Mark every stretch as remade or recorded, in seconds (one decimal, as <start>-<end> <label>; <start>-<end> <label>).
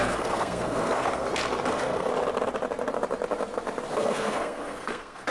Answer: 0.0-1.2 remade; 1.2-1.7 recorded; 1.7-2.1 remade; 2.1-3.9 recorded; 3.9-5.3 remade